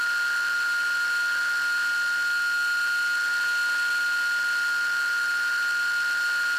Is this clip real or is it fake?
real